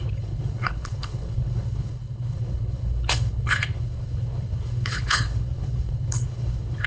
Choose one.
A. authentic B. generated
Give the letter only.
B